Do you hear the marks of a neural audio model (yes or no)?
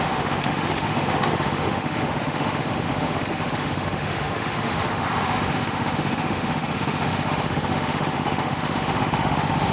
yes